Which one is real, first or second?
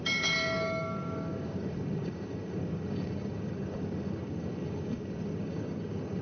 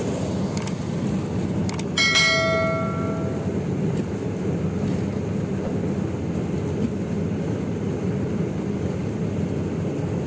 second